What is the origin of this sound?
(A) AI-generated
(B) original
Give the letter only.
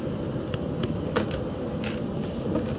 B